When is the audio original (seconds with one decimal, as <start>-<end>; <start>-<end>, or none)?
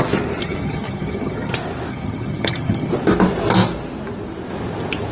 0.0-0.4; 1.5-1.9; 2.9-5.1